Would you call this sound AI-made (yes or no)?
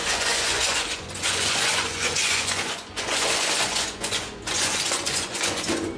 yes